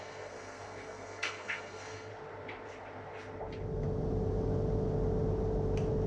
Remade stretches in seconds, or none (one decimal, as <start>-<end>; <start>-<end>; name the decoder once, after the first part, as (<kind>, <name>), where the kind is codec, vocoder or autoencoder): 0.0-2.1 (codec, SNAC)